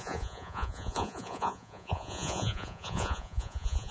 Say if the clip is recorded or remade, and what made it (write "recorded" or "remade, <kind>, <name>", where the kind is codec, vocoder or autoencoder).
remade, vocoder, Vocos